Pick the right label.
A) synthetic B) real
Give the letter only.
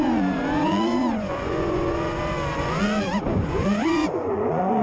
A